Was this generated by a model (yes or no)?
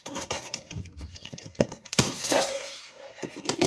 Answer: yes